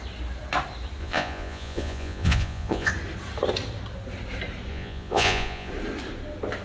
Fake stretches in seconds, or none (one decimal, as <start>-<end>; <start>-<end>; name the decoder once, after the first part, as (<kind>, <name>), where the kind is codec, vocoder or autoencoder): 1.0-2.9 (vocoder, Vocos); 4.7-5.7